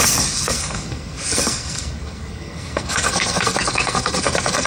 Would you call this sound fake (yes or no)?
yes